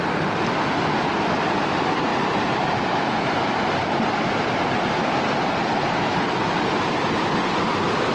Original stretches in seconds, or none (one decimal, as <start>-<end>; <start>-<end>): 0.0-2.1; 5.5-8.1